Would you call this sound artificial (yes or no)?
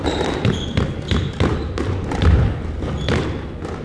no